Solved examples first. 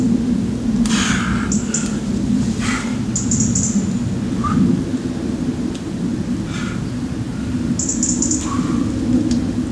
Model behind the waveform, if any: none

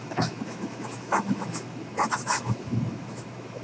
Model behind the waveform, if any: autoencoder, DAC-VAE